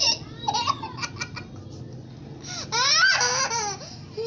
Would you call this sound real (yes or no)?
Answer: yes